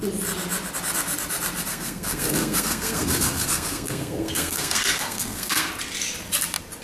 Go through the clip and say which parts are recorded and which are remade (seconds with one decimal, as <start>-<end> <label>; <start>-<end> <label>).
0.0-1.7 recorded; 1.7-5.7 remade; 5.7-6.8 recorded